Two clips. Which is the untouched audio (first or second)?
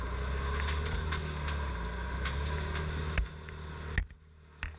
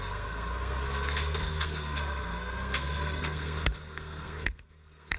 first